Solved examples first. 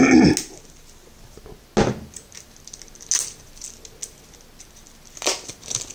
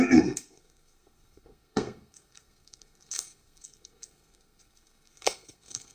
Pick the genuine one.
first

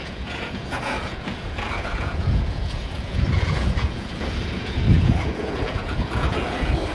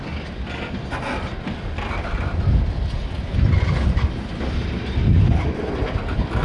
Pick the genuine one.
second